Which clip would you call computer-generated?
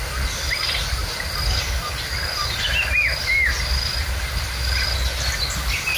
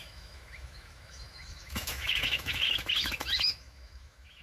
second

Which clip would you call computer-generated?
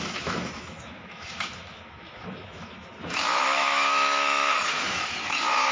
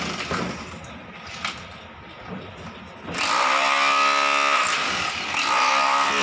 first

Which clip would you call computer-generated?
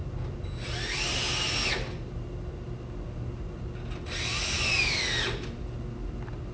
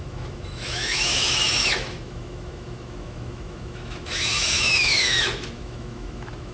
second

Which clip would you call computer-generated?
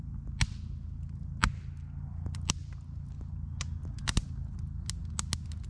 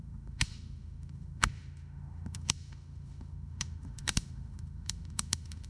second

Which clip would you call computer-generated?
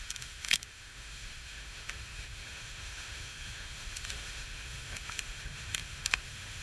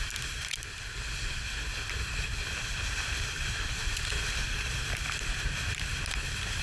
first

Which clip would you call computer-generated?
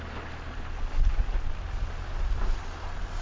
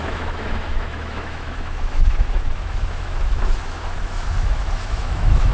second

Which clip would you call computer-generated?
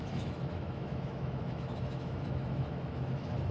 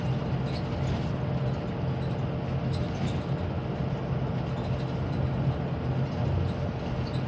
first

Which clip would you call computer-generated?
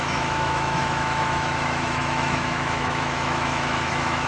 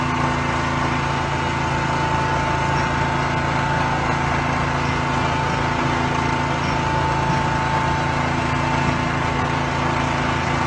first